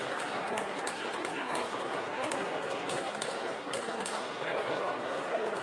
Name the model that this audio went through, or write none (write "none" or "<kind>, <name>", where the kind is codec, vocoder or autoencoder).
codec, SNAC